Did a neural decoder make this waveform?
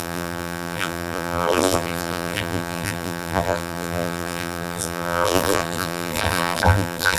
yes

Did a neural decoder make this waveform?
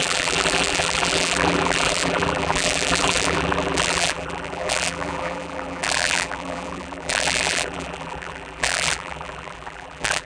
yes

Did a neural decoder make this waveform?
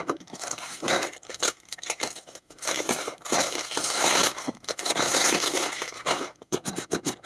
yes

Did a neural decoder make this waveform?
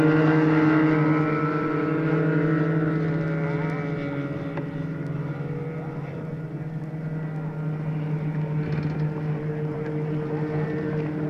no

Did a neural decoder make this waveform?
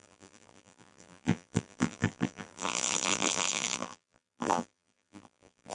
yes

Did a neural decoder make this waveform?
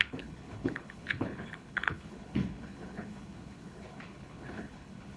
yes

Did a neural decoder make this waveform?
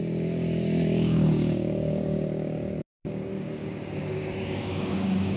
yes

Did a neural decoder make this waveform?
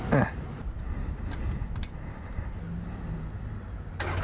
no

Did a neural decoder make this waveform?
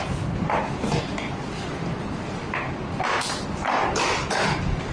no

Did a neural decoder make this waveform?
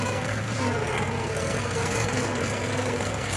yes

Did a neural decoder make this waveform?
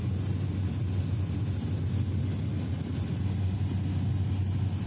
no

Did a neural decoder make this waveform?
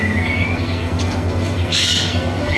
yes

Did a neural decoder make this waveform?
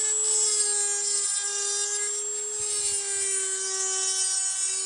no